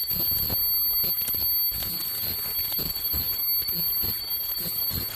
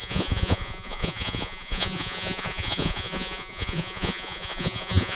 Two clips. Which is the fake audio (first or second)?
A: second